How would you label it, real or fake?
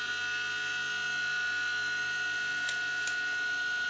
real